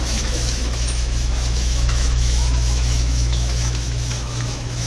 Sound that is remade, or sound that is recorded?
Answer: remade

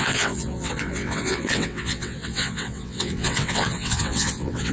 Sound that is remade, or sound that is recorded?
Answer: remade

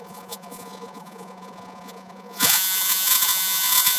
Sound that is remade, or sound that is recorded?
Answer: remade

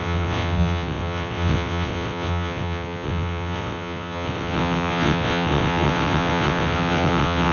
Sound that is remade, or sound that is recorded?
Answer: remade